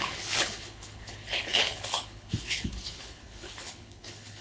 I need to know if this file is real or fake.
fake